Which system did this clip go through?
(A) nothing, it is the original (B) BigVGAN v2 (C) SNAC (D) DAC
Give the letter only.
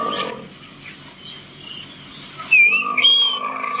A